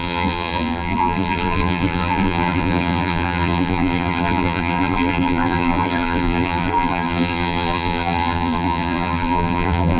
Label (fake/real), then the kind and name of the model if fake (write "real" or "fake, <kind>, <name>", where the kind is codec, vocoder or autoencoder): fake, vocoder, BigVGAN v2